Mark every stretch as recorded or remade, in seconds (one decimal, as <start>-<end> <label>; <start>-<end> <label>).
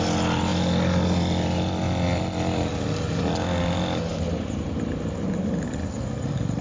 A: 0.0-4.1 recorded; 4.1-6.6 remade